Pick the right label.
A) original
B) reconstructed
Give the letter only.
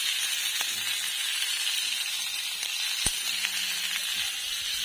A